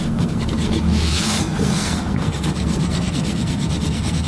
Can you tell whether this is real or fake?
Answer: fake